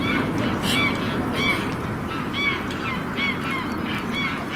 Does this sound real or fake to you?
real